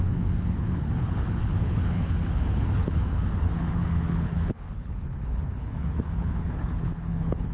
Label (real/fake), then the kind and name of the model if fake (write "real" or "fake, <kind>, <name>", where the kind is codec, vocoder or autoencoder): fake, codec, HILCodec